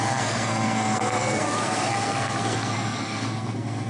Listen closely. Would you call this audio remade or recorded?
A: remade